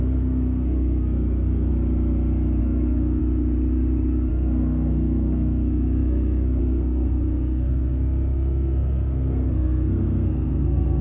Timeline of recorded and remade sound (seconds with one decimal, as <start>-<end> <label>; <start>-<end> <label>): 0.0-1.7 remade; 1.7-2.6 recorded; 2.6-3.2 remade; 3.2-4.3 recorded; 4.3-11.0 remade

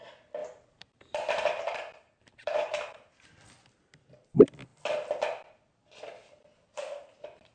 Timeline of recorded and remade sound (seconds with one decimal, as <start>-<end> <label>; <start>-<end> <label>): 0.0-0.4 recorded; 0.4-3.3 remade; 3.3-7.5 recorded

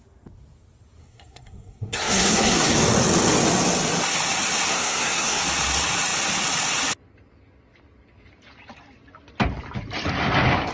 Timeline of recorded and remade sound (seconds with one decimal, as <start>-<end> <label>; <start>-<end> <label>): 0.0-1.0 recorded; 1.0-2.7 remade; 2.7-4.7 recorded; 4.7-5.4 remade; 5.4-10.7 recorded

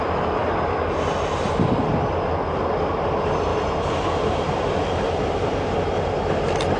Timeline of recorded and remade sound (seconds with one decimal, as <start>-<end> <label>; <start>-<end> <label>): 0.0-6.8 recorded